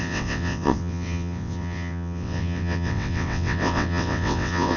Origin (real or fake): fake